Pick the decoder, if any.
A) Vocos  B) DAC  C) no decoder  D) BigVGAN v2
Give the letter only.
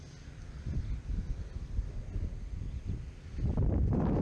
C